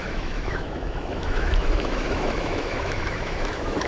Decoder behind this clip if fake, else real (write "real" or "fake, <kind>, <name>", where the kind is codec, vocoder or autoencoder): fake, autoencoder, DAC-VAE